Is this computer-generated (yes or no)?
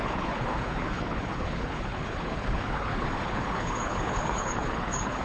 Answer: yes